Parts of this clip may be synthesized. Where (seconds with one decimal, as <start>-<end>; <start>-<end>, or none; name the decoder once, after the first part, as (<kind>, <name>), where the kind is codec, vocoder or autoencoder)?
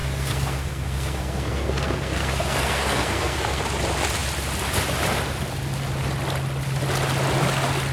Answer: 0.0-3.6 (codec, SNAC)